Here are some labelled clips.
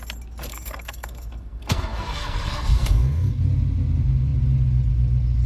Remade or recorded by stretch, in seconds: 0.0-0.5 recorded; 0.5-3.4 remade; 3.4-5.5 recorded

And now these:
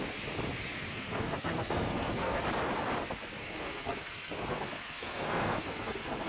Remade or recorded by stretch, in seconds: 0.0-0.9 recorded; 0.9-2.4 remade; 2.4-3.4 recorded; 3.4-6.3 remade

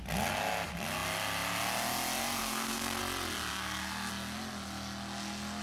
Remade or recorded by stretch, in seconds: 0.0-2.4 recorded; 2.4-3.0 remade; 3.0-3.5 recorded; 3.5-4.1 remade; 4.1-5.6 recorded

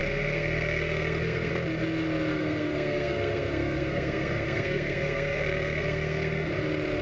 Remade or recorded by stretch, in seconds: 0.0-1.5 remade; 1.5-2.3 recorded; 2.3-6.5 remade; 6.5-7.0 recorded

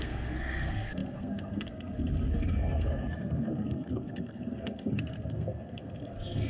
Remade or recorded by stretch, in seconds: 0.0-6.5 remade

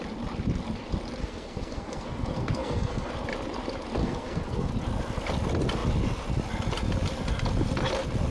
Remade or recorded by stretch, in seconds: 0.0-1.2 recorded; 1.2-3.1 remade; 3.1-4.0 recorded; 4.0-4.7 remade; 4.7-8.3 recorded

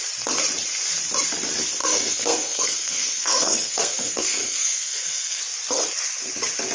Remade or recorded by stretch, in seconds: 0.0-1.8 recorded; 1.8-5.4 remade; 5.4-6.7 recorded

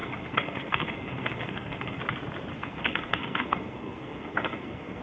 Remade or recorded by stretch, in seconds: 0.0-2.0 remade; 2.0-2.5 recorded; 2.5-5.0 remade